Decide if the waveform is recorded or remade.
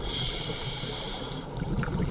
remade